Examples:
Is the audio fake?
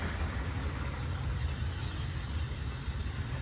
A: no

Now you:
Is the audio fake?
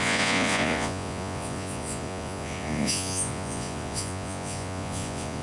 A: yes